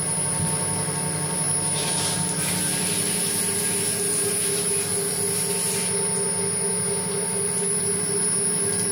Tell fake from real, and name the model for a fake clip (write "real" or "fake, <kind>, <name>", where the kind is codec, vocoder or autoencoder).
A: real